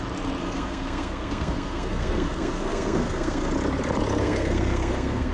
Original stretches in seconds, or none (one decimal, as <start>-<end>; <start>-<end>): 0.0-0.4; 3.5-4.2